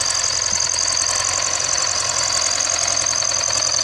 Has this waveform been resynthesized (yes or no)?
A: no